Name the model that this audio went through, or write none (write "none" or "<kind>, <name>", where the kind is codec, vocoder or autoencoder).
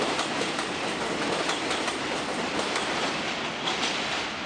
vocoder, BigVGAN v2